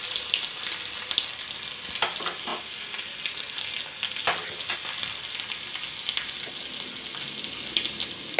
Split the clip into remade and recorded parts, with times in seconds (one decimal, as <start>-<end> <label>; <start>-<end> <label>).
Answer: 0.0-8.4 recorded